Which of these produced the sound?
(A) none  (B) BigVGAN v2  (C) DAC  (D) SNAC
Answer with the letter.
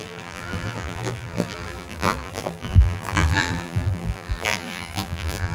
B